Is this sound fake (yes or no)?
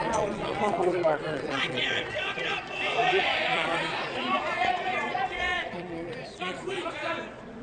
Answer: yes